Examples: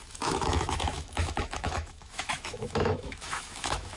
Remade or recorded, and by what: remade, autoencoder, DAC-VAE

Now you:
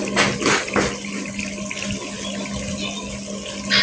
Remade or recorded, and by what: recorded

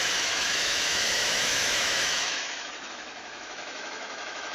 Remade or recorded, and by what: remade, autoencoder, DAC-VAE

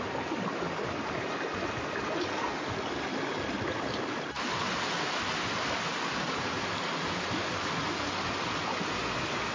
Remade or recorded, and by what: recorded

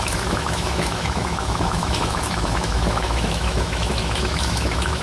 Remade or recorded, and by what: remade, autoencoder, DAC-VAE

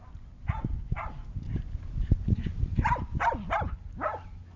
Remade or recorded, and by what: recorded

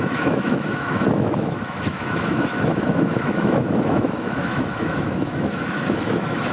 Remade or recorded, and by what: remade, autoencoder, DAC-VAE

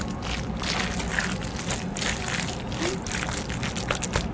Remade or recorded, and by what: recorded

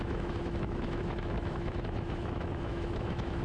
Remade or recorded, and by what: remade, autoencoder, DAC-VAE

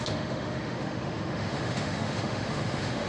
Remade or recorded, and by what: remade, autoencoder, DAC-VAE